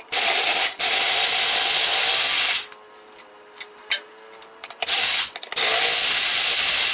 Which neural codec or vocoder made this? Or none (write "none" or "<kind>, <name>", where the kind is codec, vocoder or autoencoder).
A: none